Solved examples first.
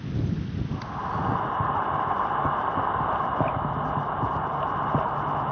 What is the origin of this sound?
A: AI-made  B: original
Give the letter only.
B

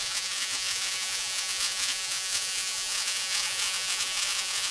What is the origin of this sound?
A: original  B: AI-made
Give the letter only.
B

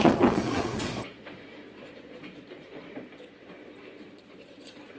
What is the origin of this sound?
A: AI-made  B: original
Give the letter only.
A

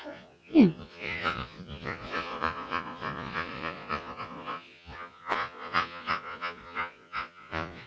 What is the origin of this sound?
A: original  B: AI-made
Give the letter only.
B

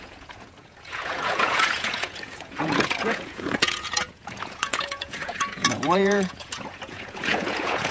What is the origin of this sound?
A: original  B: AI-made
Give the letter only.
B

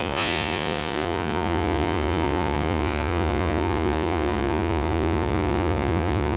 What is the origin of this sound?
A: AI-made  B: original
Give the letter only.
A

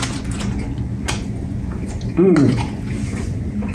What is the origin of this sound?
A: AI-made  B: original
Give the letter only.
A